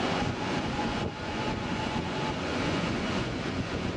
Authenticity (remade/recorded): remade